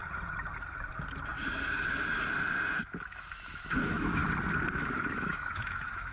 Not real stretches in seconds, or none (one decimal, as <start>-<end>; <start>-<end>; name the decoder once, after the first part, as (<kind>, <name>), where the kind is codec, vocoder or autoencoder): 2.8-4.2 (autoencoder, DAC-VAE); 4.7-6.1